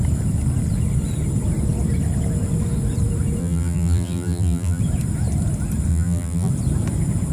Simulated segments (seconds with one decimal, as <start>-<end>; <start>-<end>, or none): 3.4-4.8; 5.9-6.5